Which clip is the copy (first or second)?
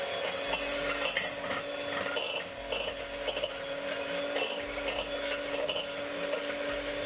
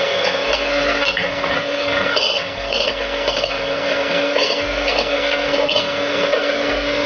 second